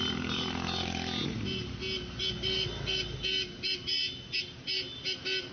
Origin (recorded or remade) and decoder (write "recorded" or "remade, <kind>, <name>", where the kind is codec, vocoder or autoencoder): recorded